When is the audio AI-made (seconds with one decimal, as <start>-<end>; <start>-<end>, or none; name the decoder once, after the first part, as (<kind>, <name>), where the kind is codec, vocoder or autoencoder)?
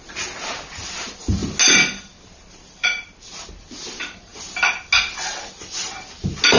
none